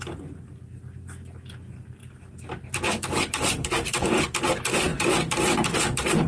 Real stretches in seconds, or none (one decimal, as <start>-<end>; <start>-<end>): 0.0-2.0; 4.2-4.9